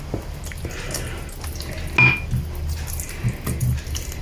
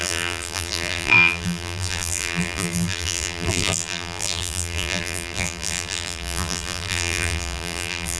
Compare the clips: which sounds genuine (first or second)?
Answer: first